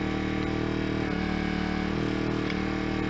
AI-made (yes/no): no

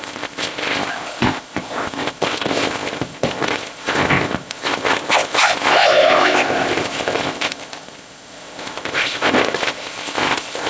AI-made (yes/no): yes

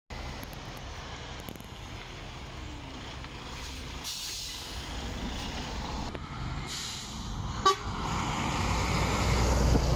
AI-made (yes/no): no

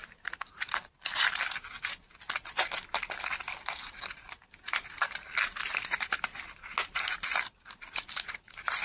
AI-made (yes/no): no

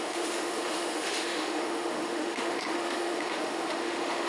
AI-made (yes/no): yes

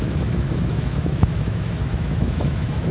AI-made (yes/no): yes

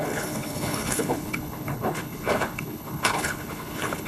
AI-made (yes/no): yes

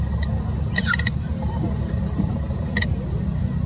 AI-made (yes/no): yes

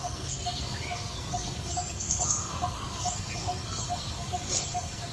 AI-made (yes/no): yes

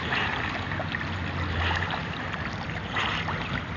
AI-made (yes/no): no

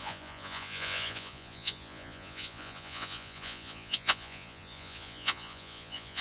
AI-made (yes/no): yes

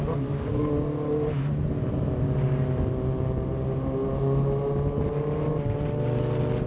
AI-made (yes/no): no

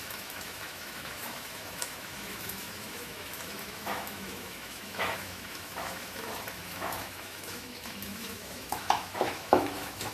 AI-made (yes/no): yes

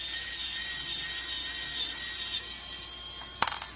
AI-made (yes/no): no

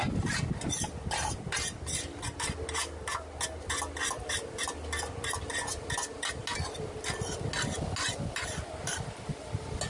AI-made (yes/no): no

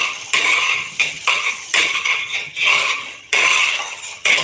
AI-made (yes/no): yes